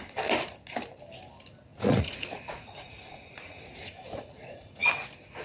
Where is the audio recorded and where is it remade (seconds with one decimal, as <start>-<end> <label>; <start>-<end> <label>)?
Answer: 0.0-1.7 recorded; 1.7-4.9 remade; 4.9-5.4 recorded